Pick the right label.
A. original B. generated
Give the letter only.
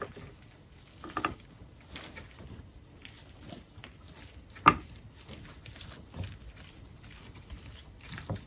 A